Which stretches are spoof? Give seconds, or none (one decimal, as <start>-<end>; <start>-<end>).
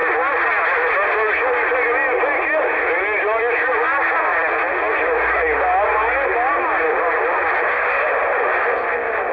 none